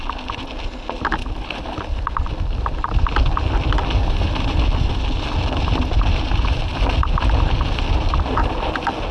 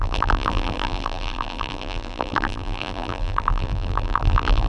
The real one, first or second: first